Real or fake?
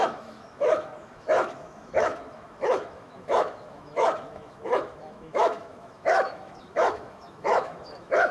fake